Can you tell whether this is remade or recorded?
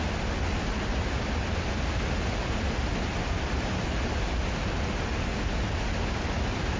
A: recorded